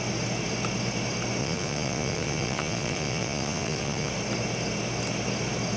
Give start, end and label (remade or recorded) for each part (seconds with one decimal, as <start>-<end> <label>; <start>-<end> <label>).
0.0-1.4 recorded; 1.4-4.1 remade; 4.1-5.8 recorded